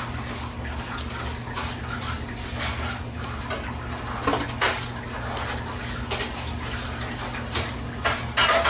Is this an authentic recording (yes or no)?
yes